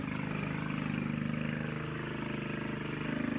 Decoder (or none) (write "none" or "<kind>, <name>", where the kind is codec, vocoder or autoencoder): none